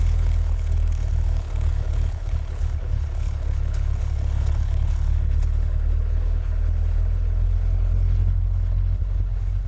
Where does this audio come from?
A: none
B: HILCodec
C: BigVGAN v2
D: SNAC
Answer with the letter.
B